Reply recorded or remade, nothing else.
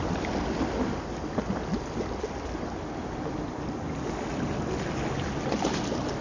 recorded